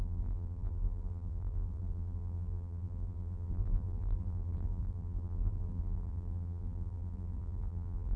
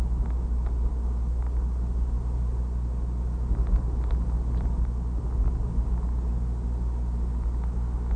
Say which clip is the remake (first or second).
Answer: first